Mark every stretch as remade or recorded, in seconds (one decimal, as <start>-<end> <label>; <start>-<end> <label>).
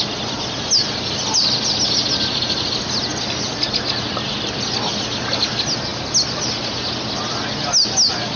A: 0.0-8.4 recorded